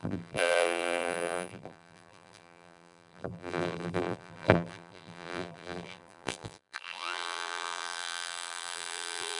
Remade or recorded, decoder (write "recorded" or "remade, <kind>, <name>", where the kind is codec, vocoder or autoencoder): remade, vocoder, BigVGAN v2